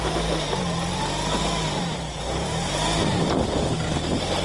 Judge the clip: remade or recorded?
recorded